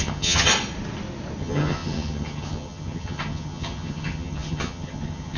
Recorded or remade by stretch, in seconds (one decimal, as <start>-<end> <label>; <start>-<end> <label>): 0.0-0.5 remade; 0.5-1.4 recorded; 1.4-5.4 remade